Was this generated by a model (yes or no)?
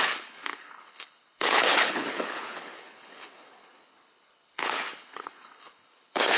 yes